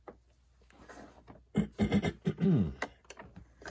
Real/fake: real